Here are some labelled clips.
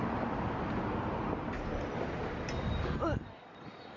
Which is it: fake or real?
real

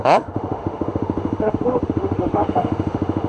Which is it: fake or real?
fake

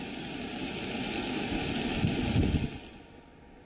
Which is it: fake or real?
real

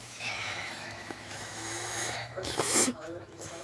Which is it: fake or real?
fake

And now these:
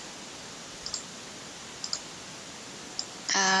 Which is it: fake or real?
real